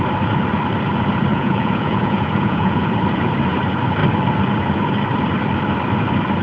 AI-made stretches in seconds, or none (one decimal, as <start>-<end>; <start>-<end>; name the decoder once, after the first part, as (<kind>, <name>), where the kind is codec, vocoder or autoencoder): 1.3-2.9 (vocoder, Vocos)